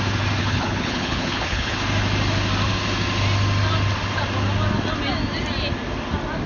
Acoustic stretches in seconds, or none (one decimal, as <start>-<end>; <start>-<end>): 0.0-0.4; 1.7-6.5